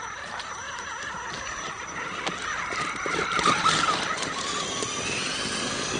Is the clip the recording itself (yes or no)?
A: yes